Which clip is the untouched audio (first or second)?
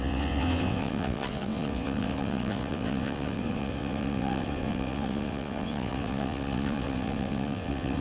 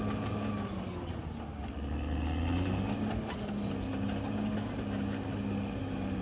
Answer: second